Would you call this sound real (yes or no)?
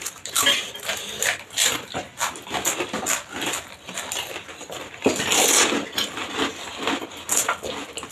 yes